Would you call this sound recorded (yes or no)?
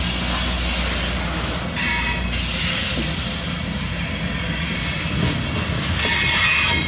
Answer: yes